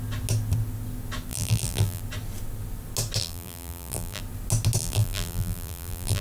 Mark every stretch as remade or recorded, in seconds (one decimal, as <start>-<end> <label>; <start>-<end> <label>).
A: 0.0-1.3 recorded; 1.3-2.0 remade; 2.0-3.2 recorded; 3.2-4.2 remade; 4.2-4.8 recorded; 4.8-6.2 remade